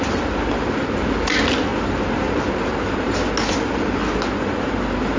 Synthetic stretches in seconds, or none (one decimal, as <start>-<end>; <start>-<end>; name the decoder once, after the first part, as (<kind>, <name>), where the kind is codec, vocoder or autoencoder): none